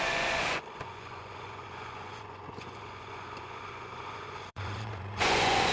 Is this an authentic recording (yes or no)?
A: no